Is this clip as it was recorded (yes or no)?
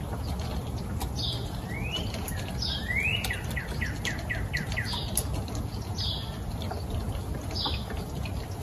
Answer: yes